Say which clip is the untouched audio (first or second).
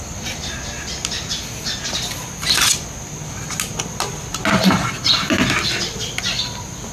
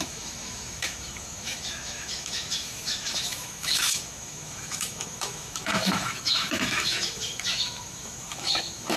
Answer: first